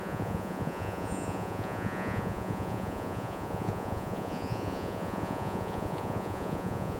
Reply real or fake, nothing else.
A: fake